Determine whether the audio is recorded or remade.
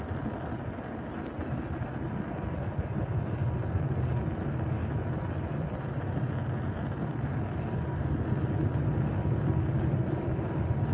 recorded